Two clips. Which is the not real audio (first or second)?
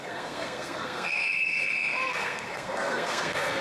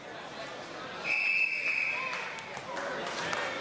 first